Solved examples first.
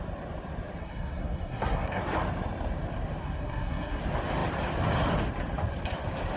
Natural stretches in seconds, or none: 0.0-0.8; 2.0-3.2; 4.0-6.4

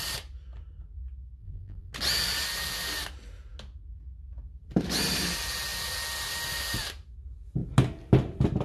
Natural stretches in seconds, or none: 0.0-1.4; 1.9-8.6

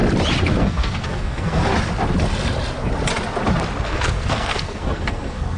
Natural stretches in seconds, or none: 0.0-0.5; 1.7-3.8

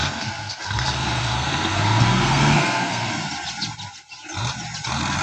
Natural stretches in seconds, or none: 3.1-5.2